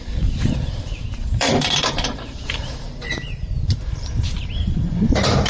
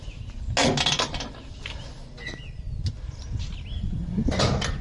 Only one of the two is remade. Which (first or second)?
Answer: first